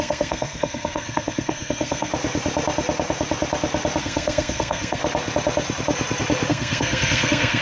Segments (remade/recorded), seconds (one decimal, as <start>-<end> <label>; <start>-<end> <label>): 0.0-2.1 remade; 2.1-4.0 recorded; 4.0-5.0 remade; 5.0-6.5 recorded; 6.5-7.6 remade